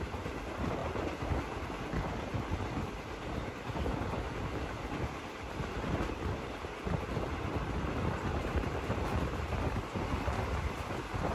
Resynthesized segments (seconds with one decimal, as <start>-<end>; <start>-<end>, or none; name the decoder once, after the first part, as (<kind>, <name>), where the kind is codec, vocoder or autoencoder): 8.3-9.5 (vocoder, BigVGAN v2)